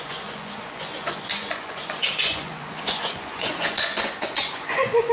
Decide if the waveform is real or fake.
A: fake